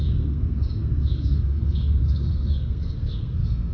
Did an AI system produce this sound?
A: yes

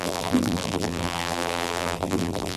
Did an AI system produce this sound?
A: yes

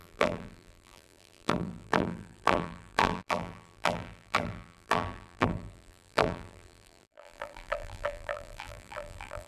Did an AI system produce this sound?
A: yes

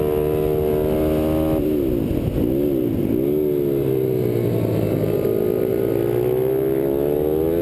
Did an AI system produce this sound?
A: no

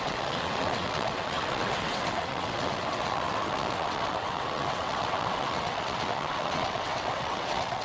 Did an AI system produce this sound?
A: yes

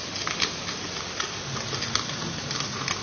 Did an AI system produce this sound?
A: no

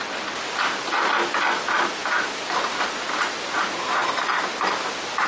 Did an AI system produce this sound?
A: no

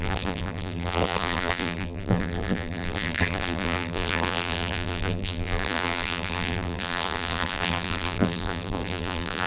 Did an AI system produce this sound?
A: yes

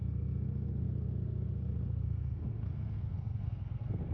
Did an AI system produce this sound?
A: yes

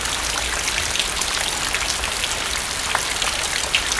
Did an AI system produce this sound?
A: no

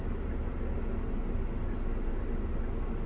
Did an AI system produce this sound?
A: no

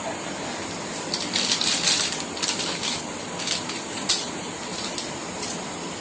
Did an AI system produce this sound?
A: yes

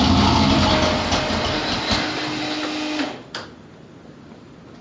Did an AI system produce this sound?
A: no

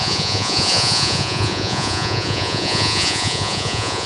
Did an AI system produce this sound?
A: yes